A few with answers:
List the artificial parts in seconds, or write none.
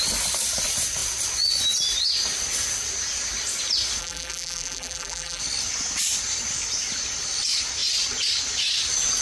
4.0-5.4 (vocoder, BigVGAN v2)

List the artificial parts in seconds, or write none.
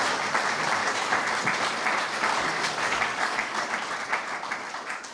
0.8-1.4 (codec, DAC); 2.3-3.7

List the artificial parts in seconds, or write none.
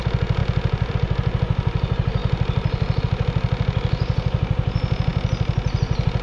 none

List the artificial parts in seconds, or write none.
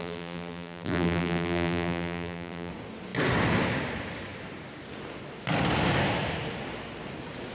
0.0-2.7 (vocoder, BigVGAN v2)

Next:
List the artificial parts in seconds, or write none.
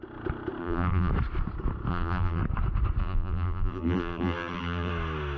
0.6-1.1 (vocoder, BigVGAN v2); 1.9-2.4; 3.0-4.9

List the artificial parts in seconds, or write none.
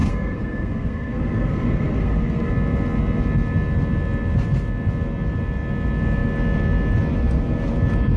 0.0-2.5 (codec, SNAC)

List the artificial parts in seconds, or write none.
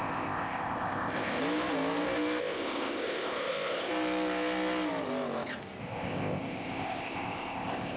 0.0-1.4 (codec, ZipCodec); 2.4-3.9; 5.8-8.0